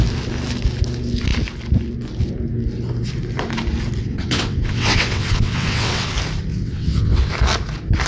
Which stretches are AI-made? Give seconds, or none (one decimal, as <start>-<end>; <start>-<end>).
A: 4.0-6.1; 6.5-7.3